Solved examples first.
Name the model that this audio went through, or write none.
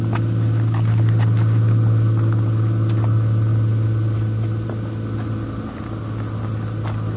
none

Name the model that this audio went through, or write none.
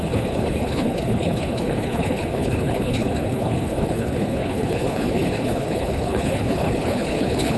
codec, HILCodec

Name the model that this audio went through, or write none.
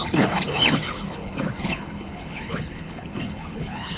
codec, HILCodec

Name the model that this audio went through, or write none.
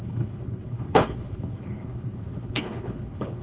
codec, HILCodec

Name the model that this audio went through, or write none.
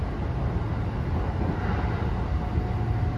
none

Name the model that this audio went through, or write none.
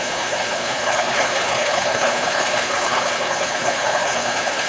codec, HILCodec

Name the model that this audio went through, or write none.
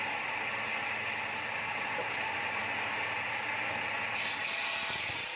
none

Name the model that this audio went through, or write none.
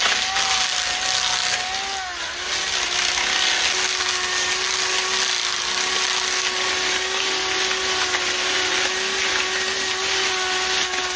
none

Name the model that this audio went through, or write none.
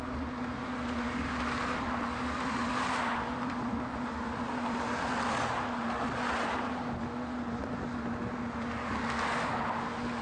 none